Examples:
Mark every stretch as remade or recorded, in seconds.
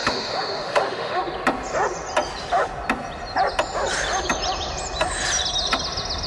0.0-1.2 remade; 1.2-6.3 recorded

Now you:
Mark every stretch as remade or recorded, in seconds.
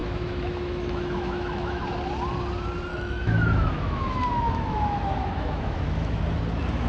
0.0-1.8 remade; 1.8-2.9 recorded; 2.9-6.2 remade; 6.2-6.9 recorded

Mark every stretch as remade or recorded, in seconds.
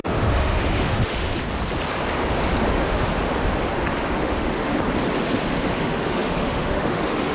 0.0-1.3 remade; 1.3-2.7 recorded; 2.7-3.1 remade; 3.1-4.1 recorded; 4.1-4.7 remade; 4.7-5.5 recorded; 5.5-7.3 remade